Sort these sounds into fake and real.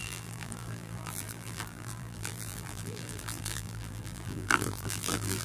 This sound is fake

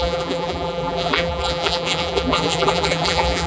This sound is fake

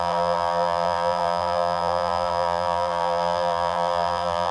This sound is fake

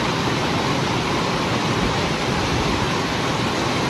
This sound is real